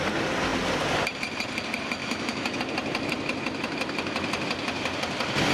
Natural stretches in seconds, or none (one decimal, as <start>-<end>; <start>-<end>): 0.0-2.0; 2.6-5.5